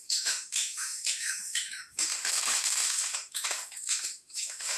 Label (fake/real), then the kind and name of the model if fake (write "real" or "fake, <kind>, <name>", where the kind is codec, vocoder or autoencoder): fake, autoencoder, DAC-VAE